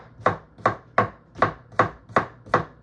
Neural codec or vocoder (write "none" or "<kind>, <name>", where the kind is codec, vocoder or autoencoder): none